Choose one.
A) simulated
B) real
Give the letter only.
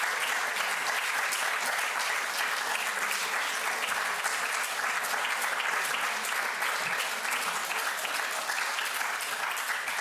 B